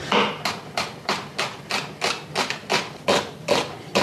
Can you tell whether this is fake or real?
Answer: real